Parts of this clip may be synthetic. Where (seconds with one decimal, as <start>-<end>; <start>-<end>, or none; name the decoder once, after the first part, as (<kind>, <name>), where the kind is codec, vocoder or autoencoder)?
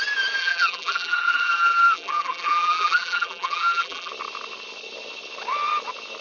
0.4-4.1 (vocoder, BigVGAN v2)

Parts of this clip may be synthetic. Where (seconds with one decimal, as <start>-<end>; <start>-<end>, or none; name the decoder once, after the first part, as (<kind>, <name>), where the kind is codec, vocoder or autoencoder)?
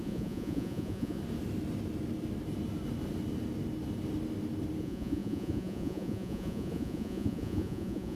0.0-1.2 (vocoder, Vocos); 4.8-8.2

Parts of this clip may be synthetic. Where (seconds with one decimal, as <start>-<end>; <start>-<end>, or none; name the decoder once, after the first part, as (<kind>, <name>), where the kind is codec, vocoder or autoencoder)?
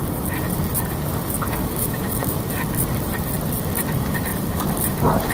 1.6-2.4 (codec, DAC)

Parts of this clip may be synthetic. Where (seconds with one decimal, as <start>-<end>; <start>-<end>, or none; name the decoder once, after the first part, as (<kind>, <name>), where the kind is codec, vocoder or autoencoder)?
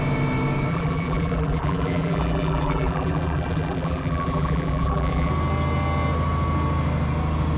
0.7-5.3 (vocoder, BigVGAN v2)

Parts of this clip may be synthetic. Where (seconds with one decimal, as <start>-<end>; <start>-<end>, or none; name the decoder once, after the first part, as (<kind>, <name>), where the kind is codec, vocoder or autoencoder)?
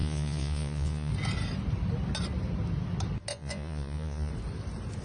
0.0-1.1 (vocoder, Vocos); 3.3-4.3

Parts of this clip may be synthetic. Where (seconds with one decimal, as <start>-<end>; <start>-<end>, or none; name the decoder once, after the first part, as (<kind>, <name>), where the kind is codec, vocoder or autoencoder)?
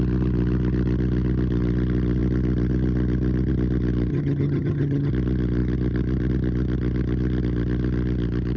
4.1-5.1 (vocoder, HiFi-GAN)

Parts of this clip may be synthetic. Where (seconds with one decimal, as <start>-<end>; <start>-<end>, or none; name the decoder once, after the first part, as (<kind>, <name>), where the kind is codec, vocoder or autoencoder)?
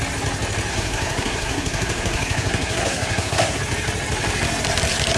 0.7-3.6 (codec, SNAC)